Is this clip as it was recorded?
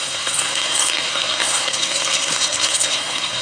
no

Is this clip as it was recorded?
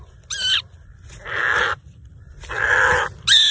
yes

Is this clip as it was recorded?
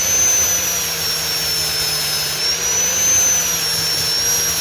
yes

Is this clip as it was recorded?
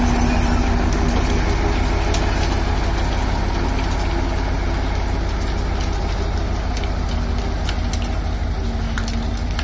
yes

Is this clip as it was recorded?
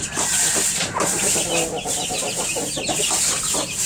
yes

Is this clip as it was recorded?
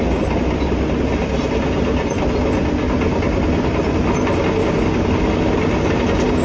yes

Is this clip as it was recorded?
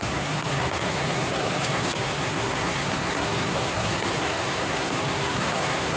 no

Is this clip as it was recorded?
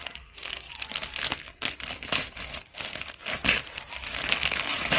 yes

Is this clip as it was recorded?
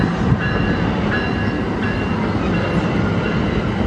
yes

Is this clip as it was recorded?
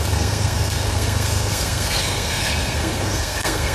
no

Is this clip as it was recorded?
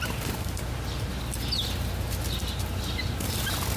yes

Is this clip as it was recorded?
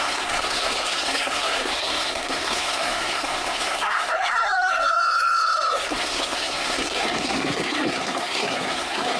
no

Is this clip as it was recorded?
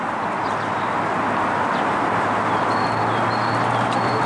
yes